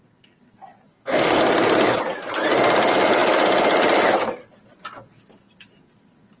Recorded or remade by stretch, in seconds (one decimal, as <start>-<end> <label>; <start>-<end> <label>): 0.0-0.9 recorded; 0.9-1.4 remade; 1.4-6.4 recorded